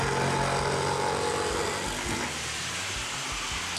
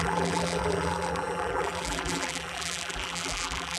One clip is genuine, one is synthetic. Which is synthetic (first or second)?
second